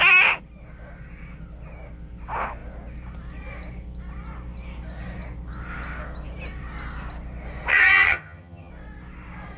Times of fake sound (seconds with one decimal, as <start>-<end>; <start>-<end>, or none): 7.7-8.7